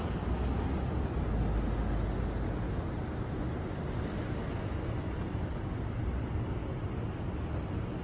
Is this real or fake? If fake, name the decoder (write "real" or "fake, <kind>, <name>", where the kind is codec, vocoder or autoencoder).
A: real